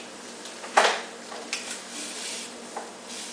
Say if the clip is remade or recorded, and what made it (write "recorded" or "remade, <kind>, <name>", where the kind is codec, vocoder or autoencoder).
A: recorded